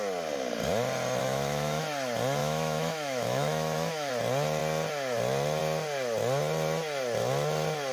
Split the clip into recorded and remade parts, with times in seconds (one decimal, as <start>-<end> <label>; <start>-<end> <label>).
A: 0.0-1.2 recorded; 1.2-1.8 remade; 1.8-2.4 recorded; 2.4-4.1 remade; 4.1-7.9 recorded